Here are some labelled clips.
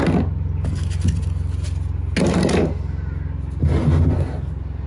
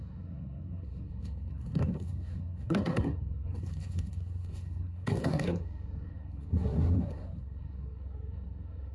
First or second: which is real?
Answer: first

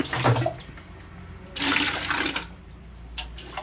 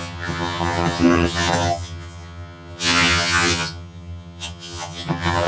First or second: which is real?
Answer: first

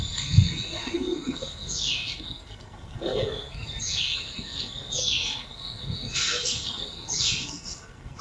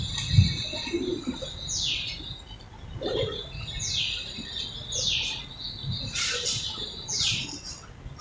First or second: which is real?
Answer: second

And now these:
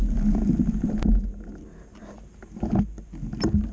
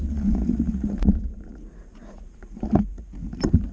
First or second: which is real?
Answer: first